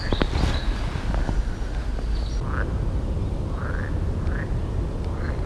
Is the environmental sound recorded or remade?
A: recorded